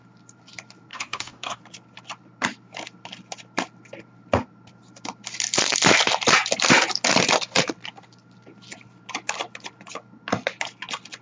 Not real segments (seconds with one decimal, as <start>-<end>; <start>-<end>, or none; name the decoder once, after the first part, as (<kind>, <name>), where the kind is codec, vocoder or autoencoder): 0.9-1.6 (codec, DAC)